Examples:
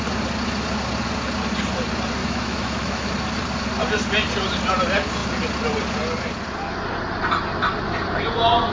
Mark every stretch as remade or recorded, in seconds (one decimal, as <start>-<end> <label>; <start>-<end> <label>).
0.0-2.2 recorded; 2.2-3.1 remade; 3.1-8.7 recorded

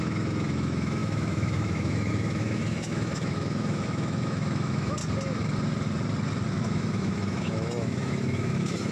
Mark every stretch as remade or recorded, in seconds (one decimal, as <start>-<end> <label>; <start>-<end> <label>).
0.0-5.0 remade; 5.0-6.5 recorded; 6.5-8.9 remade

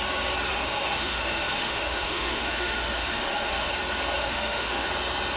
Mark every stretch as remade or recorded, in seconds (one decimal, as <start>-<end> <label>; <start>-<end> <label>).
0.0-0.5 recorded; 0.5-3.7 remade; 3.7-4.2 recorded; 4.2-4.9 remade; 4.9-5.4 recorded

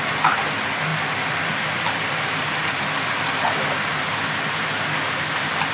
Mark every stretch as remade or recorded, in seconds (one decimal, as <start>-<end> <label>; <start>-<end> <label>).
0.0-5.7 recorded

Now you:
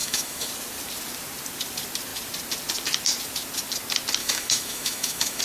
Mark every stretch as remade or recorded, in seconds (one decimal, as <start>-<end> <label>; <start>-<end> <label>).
0.0-0.5 remade; 0.5-4.2 recorded; 4.2-5.4 remade

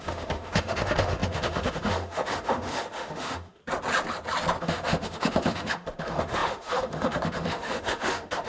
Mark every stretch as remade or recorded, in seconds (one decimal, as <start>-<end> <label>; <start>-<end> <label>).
0.0-3.6 remade; 3.6-4.6 recorded; 4.6-8.5 remade

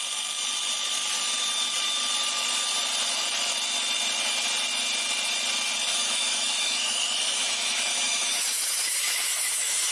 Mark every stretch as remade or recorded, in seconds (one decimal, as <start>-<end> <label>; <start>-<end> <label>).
0.0-5.9 recorded; 5.9-9.9 remade

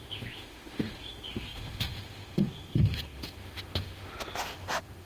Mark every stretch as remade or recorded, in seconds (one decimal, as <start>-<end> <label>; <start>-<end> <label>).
0.0-5.1 remade